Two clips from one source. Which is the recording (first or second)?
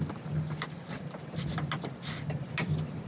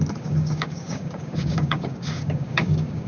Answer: first